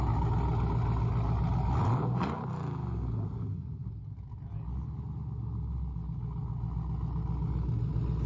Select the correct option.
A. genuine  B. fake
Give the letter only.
A